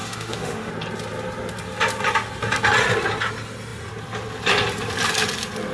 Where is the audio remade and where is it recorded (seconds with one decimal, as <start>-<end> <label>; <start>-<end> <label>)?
0.0-0.7 remade; 0.7-5.7 recorded